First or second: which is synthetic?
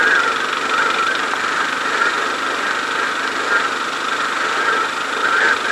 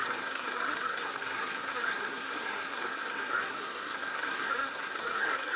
second